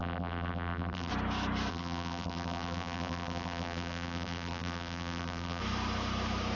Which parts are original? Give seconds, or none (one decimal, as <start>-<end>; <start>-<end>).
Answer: 1.1-1.7; 5.6-6.5